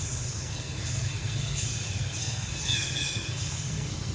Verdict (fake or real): fake